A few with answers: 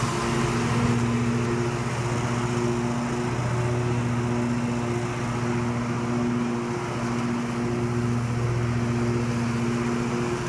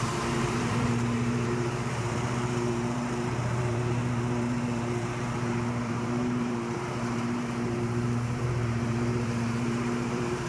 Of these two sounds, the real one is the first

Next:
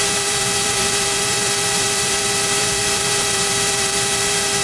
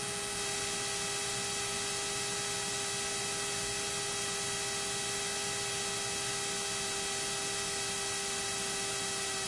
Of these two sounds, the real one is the second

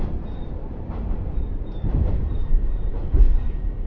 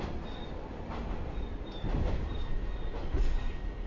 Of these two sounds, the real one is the second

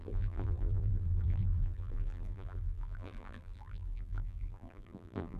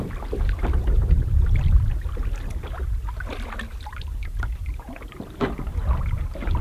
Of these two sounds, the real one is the second